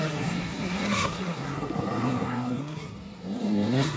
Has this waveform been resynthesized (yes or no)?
yes